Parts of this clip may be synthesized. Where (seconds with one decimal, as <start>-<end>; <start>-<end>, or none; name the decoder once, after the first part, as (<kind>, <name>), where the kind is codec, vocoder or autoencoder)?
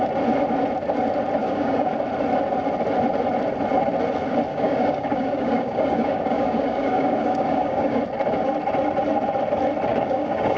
1.4-1.9 (codec, DAC); 4.5-8.0; 9.9-10.6